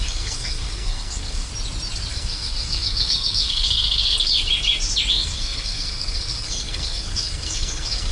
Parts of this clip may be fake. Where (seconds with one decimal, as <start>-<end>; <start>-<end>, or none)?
0.0-1.5; 2.1-4.3; 5.1-8.1